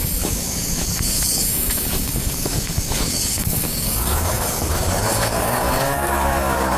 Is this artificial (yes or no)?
yes